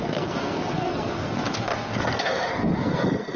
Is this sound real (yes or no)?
no